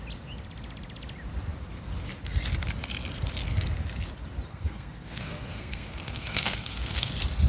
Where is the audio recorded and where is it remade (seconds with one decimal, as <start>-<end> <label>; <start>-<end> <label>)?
0.0-4.5 recorded; 4.5-7.1 remade; 7.1-7.5 recorded